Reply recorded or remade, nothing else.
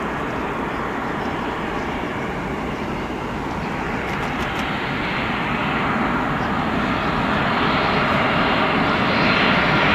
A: recorded